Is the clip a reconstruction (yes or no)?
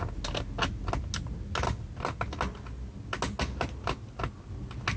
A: no